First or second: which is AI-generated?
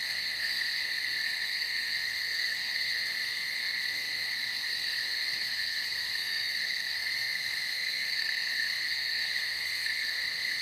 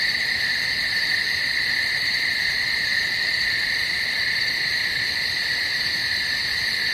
first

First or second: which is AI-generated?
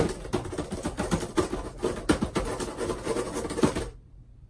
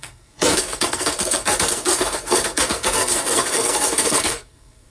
second